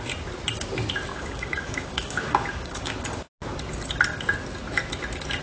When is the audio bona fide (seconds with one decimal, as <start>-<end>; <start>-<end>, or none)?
0.0-1.1; 2.9-5.4

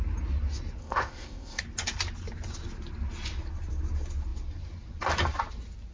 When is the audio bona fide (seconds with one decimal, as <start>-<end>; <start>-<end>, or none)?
0.0-0.8; 1.6-5.9